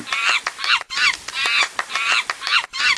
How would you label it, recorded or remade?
recorded